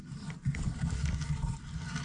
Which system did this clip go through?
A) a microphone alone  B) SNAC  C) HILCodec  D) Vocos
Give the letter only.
A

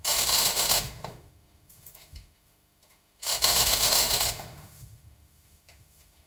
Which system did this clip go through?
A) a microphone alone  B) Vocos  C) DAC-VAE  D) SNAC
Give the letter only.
C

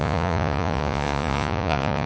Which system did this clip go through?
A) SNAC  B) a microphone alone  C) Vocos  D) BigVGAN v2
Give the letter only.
C